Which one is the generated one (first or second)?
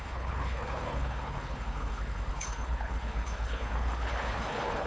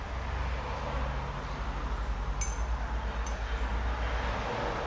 first